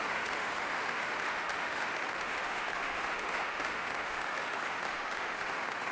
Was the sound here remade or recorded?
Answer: remade